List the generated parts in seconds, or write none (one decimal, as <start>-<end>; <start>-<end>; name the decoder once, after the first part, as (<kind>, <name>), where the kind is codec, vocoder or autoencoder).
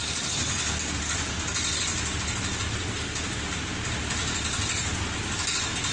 none